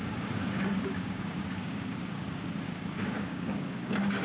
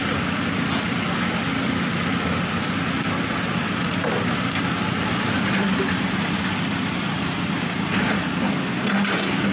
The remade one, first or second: first